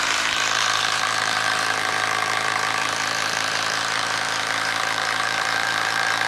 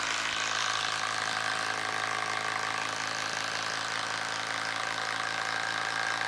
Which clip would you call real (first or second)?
second